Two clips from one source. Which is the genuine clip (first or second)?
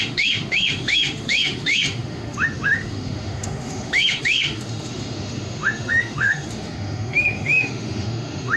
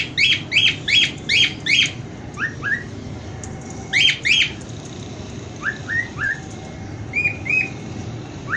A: second